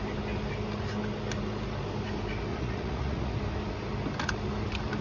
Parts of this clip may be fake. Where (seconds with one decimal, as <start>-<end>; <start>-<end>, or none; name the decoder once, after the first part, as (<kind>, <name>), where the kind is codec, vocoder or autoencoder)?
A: 2.5-3.3 (vocoder, Vocos)